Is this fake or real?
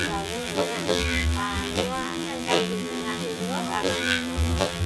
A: fake